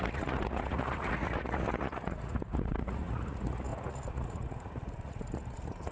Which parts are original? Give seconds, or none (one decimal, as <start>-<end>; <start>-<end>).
none